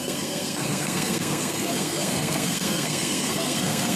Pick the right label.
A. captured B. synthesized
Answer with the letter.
B